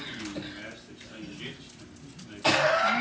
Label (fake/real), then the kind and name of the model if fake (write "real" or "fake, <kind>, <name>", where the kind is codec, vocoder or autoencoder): real